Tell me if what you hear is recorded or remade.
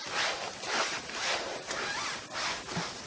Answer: recorded